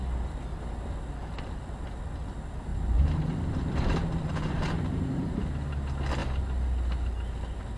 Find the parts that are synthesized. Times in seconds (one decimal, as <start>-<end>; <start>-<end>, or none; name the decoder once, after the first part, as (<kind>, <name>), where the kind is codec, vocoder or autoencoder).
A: 2.7-5.3 (vocoder, BigVGAN v2)